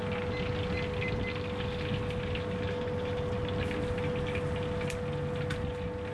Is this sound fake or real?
real